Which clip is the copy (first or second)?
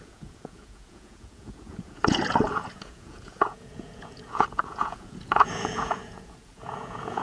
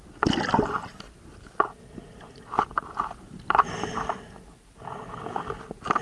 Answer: first